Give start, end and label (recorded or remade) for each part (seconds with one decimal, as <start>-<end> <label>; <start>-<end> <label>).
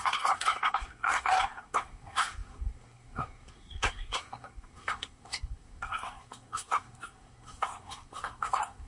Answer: 0.0-8.9 remade